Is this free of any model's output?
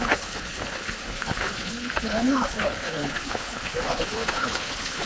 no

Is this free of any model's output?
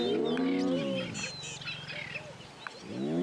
yes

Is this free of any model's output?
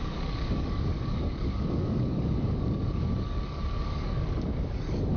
no